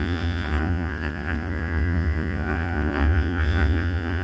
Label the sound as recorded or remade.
remade